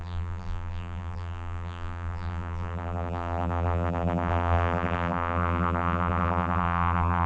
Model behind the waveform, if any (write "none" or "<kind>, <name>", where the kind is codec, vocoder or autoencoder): vocoder, BigVGAN v2